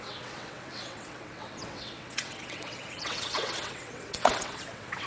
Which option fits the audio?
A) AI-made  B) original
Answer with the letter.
A